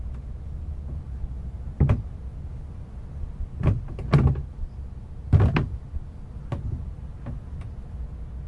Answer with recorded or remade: recorded